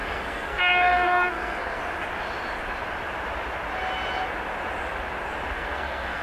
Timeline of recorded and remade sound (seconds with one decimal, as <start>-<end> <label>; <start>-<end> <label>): 0.0-1.8 remade; 1.8-5.5 recorded; 5.5-6.2 remade